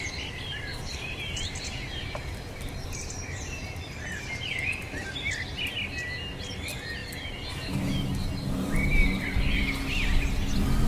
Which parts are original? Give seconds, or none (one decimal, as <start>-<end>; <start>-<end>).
0.0-0.7; 3.1-7.0; 8.8-10.9